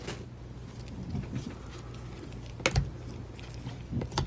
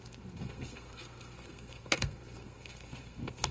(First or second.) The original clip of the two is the first